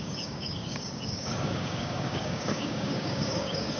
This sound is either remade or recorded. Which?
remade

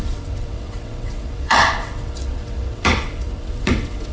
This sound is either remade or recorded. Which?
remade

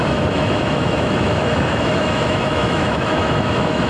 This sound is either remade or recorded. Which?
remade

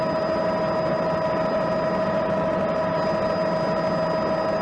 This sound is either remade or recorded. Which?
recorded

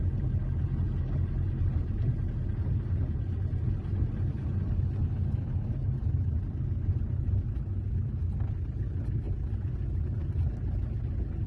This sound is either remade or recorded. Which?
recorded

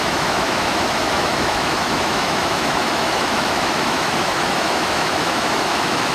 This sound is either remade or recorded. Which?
remade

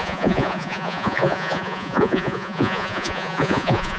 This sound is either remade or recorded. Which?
remade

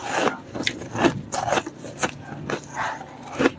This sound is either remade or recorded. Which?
recorded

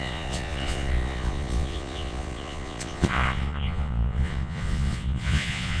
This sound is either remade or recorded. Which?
remade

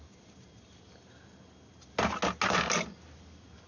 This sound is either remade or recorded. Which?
recorded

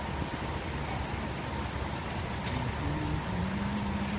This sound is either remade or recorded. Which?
recorded